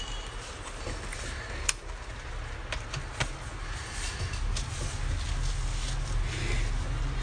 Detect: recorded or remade recorded